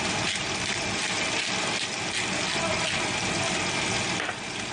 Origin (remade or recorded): recorded